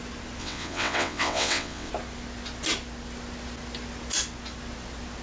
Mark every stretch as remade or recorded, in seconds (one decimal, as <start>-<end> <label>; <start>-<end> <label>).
0.0-0.4 recorded; 0.4-1.9 remade; 1.9-5.2 recorded